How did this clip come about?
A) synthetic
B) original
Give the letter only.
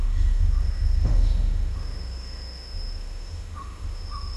A